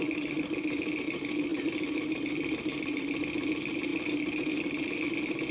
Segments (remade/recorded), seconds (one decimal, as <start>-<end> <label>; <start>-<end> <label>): 0.0-1.5 recorded; 1.5-3.2 remade; 3.2-5.5 recorded